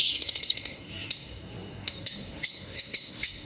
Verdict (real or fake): fake